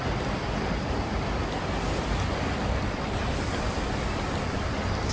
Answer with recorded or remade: remade